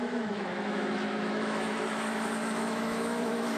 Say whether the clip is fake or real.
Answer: fake